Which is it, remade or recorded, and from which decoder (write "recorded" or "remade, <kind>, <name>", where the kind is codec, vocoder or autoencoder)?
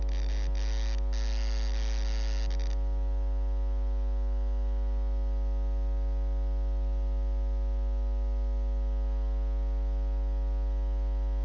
recorded